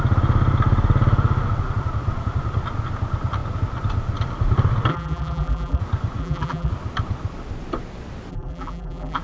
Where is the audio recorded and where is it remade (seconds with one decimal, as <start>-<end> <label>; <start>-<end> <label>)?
0.0-4.9 recorded; 4.9-5.8 remade; 5.8-6.2 recorded; 6.2-6.7 remade; 6.7-8.3 recorded; 8.3-9.2 remade